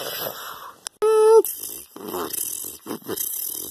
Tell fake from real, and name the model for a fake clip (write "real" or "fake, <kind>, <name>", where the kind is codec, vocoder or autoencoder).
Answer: real